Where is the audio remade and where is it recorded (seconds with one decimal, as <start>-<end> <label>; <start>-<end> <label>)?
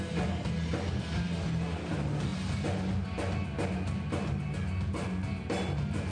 0.0-6.1 recorded